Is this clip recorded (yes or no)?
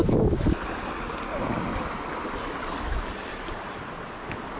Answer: yes